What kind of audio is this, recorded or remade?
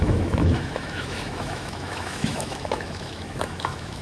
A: remade